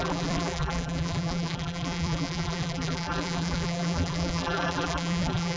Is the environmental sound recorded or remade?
remade